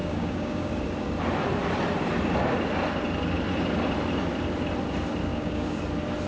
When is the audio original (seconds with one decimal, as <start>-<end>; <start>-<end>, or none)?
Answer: 0.7-5.3; 5.8-6.3